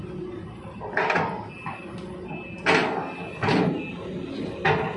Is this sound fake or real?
real